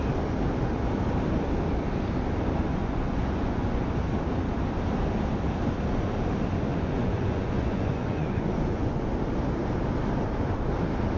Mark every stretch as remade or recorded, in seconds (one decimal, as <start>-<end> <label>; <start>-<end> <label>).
0.0-2.8 recorded; 2.8-3.8 remade; 3.8-6.7 recorded; 6.7-9.1 remade; 9.1-11.2 recorded